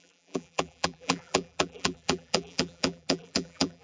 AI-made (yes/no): yes